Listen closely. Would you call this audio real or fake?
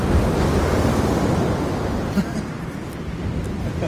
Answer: real